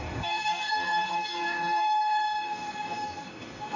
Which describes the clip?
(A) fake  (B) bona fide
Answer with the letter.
A